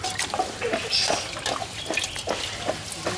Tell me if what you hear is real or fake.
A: real